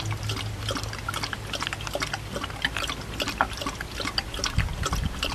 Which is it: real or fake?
real